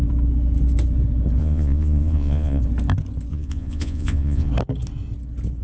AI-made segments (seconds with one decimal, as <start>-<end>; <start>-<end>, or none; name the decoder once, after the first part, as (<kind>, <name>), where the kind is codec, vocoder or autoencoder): 1.4-2.6 (vocoder, Vocos); 3.3-4.5